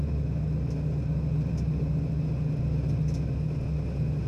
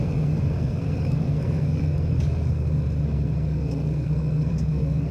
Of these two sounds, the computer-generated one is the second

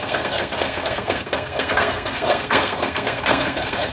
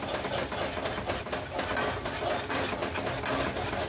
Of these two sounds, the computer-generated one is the first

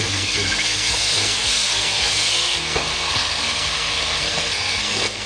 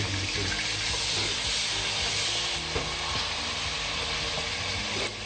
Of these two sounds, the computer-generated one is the first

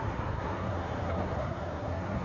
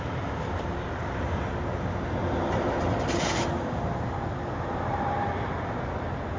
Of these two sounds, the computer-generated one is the first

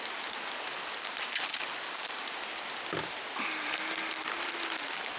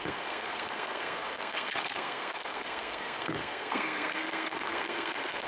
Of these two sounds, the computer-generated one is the second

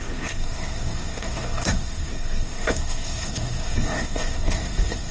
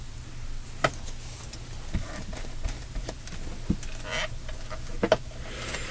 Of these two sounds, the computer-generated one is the first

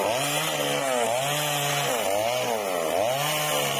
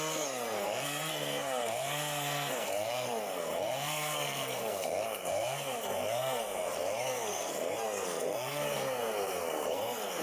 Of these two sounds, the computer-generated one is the second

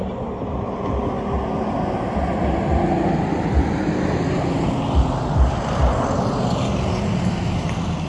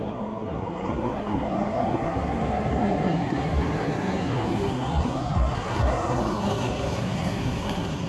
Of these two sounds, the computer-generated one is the second